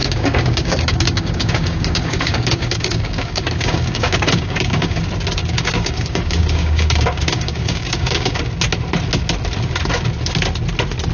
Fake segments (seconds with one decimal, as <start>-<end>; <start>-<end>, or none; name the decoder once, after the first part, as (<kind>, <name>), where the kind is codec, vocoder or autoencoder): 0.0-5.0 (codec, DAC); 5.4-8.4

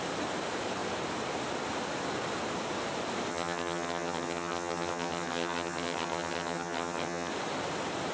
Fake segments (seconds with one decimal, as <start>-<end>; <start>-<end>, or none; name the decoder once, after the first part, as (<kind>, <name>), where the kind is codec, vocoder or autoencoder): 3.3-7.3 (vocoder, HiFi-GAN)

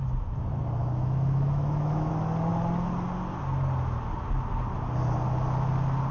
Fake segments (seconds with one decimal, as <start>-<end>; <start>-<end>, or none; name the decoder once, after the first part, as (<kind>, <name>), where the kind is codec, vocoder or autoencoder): 0.8-2.1 (autoencoder, DAC-VAE)